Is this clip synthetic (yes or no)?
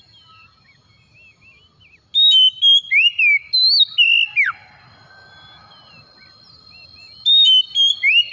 no